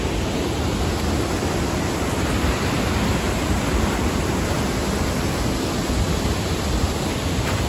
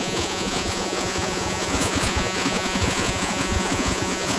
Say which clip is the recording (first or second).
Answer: first